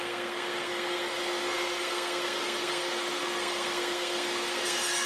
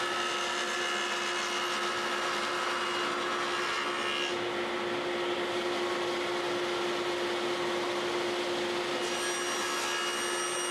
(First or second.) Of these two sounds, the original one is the second